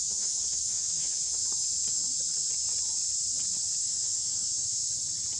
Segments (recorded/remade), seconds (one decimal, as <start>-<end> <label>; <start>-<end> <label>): 0.0-1.4 remade; 1.4-3.8 recorded; 3.8-4.8 remade; 4.8-5.4 recorded